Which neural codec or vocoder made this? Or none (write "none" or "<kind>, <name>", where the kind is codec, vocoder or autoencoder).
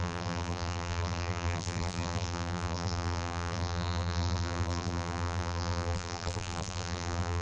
vocoder, BigVGAN v2